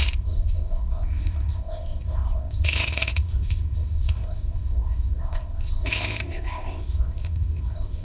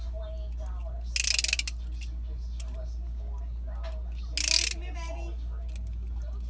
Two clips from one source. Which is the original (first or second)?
second